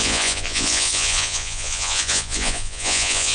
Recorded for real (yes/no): no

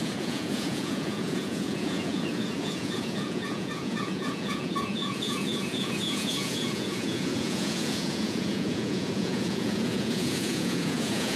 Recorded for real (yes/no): no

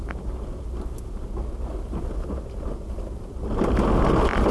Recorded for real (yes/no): yes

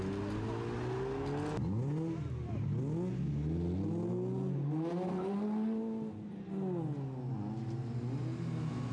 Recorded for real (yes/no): yes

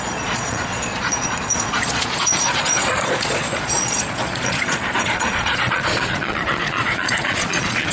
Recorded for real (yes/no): no